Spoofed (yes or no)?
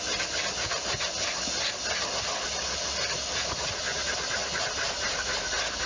no